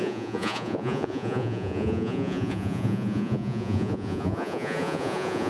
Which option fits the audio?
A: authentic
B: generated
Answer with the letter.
B